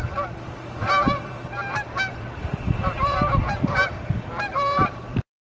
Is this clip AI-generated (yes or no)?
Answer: yes